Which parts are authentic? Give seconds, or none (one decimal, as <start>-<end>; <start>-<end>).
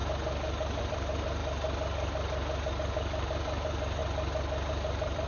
0.0-0.8; 1.4-2.7; 4.0-4.7